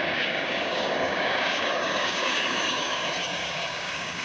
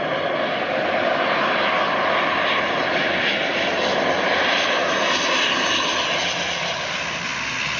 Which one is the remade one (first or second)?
first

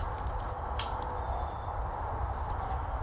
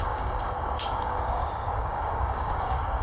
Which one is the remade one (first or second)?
second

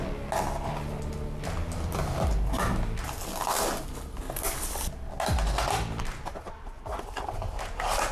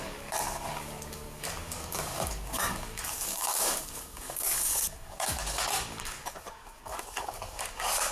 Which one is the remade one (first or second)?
second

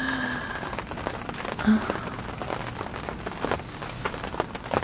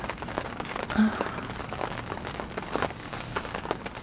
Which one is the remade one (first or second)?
second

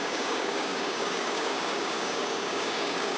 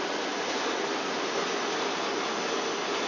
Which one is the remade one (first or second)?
first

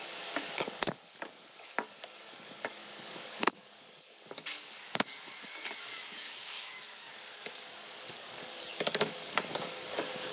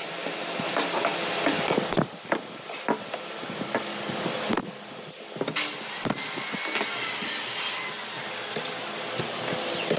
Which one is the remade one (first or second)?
first